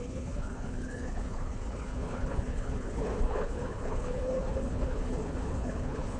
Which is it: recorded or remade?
remade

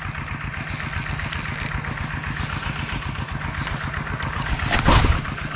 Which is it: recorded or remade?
recorded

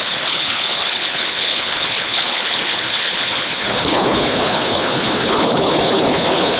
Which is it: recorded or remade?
remade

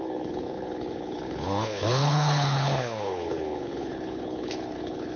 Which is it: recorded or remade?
remade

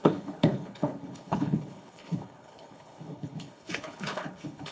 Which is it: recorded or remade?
remade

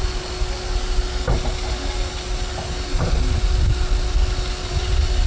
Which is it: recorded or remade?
recorded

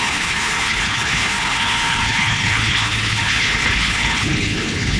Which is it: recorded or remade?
remade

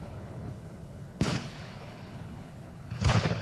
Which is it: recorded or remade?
remade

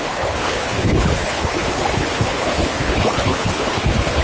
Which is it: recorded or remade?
remade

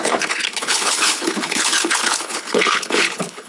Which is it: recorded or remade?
remade